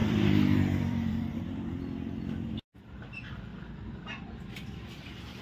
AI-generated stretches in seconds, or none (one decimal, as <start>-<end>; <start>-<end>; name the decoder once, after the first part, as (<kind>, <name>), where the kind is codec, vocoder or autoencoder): 0.0-3.5 (vocoder, BigVGAN v2)